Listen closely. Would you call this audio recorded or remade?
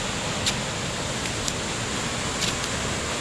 recorded